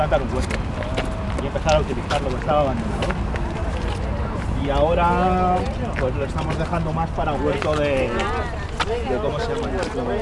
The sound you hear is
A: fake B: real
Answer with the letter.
B